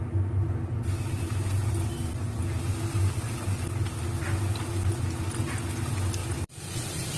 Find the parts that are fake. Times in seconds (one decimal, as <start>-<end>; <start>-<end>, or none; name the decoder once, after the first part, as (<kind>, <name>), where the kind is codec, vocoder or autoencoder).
none